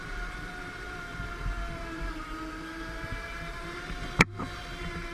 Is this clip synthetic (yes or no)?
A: yes